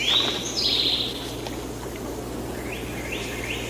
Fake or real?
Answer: real